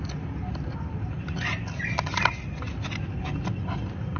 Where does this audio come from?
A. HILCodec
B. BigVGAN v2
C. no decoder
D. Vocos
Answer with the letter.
C